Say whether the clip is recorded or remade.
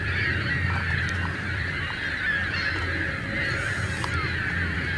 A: remade